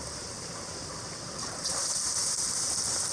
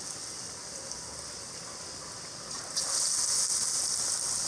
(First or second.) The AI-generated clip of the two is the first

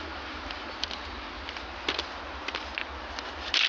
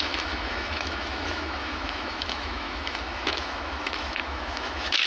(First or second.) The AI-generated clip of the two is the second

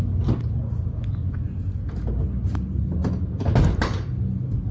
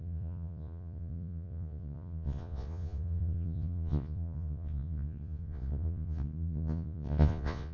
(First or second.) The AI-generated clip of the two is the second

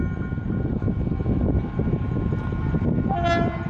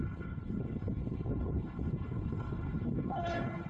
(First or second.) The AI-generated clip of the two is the second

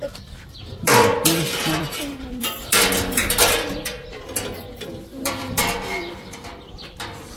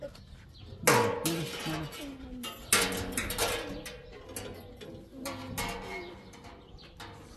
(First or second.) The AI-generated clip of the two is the first